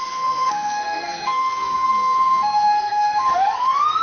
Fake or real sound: fake